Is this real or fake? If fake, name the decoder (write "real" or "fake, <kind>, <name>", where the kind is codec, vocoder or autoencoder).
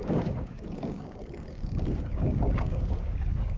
fake, codec, DAC